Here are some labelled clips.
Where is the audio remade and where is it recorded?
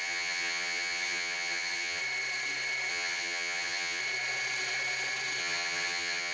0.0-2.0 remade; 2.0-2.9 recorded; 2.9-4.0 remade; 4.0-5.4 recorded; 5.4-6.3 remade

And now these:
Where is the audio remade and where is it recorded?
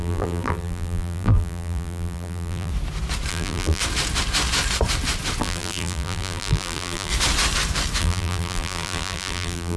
0.0-2.7 remade; 2.7-3.3 recorded; 3.3-3.8 remade; 3.8-5.4 recorded; 5.4-7.1 remade; 7.1-8.0 recorded; 8.0-9.8 remade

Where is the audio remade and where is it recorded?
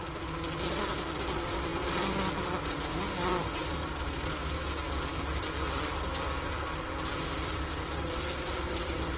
0.0-9.2 recorded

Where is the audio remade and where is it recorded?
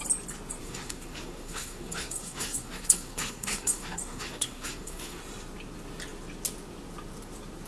0.0-0.6 recorded; 0.6-5.2 remade; 5.2-7.7 recorded